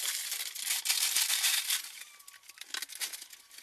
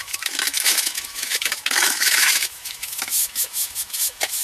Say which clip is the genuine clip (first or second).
first